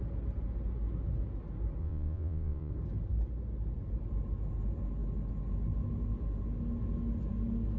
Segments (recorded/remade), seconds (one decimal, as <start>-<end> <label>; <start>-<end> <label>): 0.0-1.8 recorded; 1.8-2.7 remade; 2.7-7.8 recorded